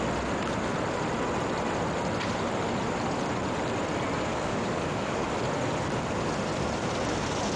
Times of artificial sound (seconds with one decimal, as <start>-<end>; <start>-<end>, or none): 4.3-5.3